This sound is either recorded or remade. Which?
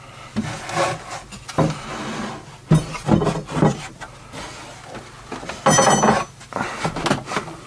recorded